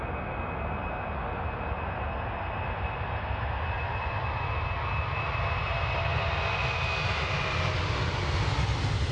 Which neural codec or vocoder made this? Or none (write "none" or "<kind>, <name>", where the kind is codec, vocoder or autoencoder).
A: none